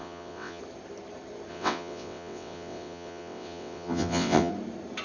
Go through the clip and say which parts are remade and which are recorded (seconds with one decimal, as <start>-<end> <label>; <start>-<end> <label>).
0.0-0.6 remade; 0.6-1.5 recorded; 1.5-4.5 remade; 4.5-5.0 recorded